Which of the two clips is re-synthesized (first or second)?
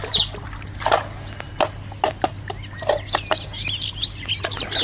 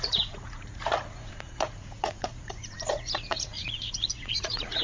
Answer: second